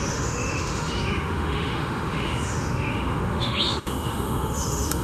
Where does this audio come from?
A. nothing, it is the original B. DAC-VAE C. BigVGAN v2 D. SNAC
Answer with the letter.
B